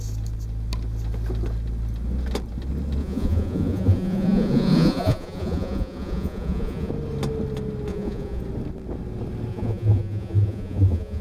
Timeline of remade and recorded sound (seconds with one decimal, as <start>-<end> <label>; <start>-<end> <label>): 0.0-3.0 recorded; 3.0-6.9 remade; 6.9-7.9 recorded; 7.9-8.4 remade; 8.4-9.5 recorded; 9.5-11.2 remade